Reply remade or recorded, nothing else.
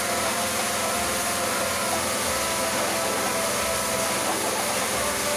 recorded